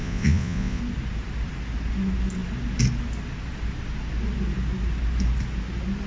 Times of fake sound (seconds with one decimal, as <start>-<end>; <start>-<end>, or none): 0.0-0.8